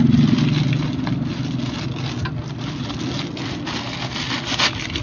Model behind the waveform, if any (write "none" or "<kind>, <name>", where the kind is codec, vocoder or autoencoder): none